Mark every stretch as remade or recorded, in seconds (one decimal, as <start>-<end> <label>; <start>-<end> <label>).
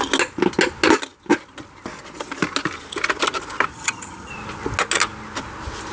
0.0-3.7 recorded; 3.7-4.3 remade; 4.3-5.9 recorded